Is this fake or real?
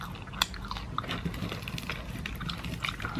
real